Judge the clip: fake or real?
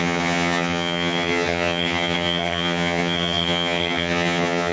fake